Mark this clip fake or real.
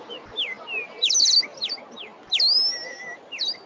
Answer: real